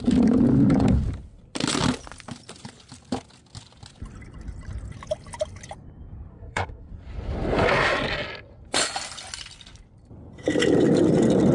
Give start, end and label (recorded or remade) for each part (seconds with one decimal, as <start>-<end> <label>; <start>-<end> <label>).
0.0-6.3 recorded; 6.3-6.9 remade; 6.9-11.5 recorded